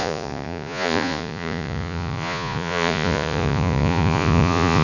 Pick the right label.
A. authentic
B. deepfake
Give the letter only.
B